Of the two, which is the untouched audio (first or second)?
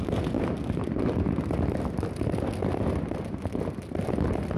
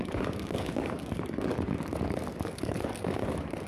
first